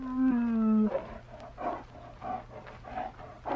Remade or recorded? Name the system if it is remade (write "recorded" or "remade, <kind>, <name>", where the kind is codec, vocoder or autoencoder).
recorded